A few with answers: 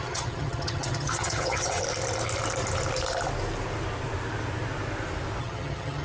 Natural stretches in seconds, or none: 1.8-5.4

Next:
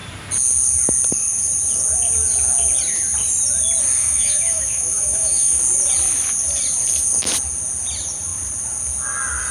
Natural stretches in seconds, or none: 0.0-4.0; 5.6-9.5

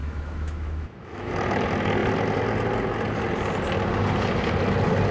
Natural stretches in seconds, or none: 1.3-5.1

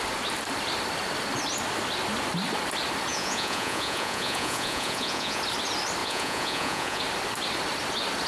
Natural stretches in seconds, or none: 0.0-3.1; 5.4-6.0; 7.0-8.3